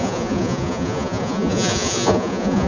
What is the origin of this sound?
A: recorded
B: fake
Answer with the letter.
B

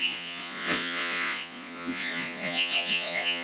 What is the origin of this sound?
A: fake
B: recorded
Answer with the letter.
A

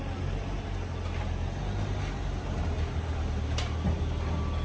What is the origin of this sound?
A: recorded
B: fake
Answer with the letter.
A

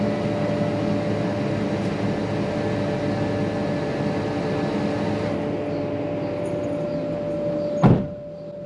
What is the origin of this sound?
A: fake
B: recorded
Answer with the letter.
B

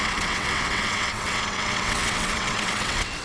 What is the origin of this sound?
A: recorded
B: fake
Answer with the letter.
B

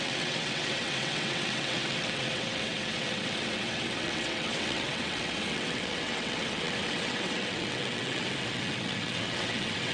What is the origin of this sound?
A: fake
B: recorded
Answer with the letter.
A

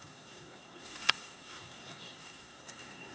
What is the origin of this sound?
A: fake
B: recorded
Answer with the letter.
A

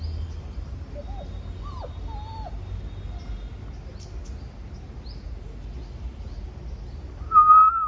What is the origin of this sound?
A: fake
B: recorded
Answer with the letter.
B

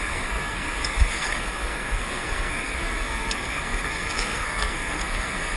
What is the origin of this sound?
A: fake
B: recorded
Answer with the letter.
A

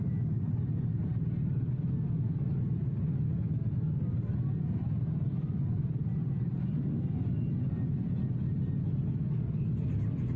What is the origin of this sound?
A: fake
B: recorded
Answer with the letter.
B